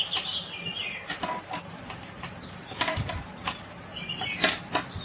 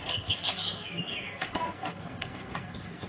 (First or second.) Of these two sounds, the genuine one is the first